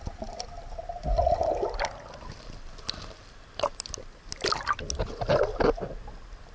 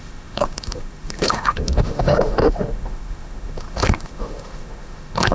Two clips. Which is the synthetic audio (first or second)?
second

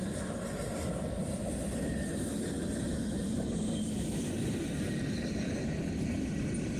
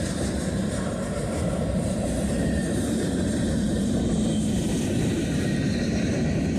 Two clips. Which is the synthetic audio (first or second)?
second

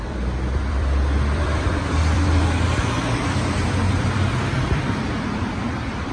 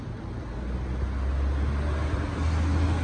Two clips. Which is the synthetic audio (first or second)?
first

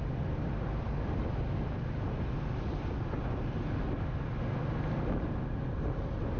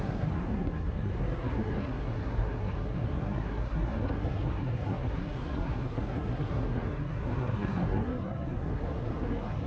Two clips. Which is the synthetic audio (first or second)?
second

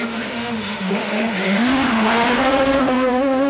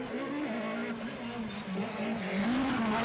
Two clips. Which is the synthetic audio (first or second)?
first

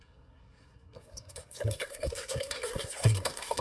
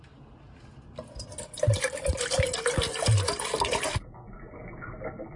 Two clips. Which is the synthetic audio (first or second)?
first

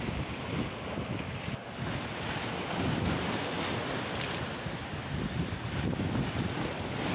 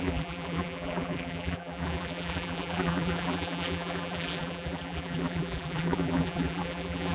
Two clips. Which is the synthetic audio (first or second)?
second